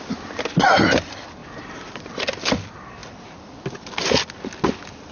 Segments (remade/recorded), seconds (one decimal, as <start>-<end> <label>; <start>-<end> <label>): 0.0-5.1 recorded